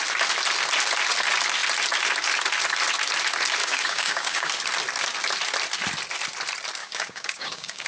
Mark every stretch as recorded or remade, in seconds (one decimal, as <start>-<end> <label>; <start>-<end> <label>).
0.0-3.6 recorded; 3.6-4.5 remade; 4.5-6.8 recorded; 6.8-7.9 remade